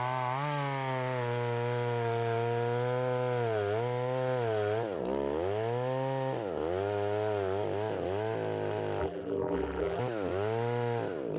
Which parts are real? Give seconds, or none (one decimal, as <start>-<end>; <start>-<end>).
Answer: 0.0-9.0; 10.0-11.4